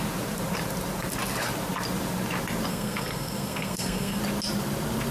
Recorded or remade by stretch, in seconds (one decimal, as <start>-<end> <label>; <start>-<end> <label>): 0.0-2.7 recorded; 2.7-4.2 remade; 4.2-5.1 recorded